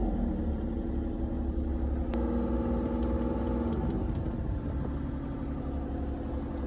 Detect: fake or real real